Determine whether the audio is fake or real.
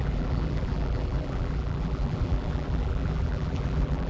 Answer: fake